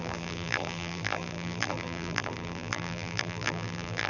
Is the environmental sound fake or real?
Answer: fake